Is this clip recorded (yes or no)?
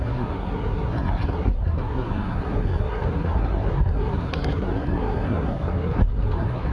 no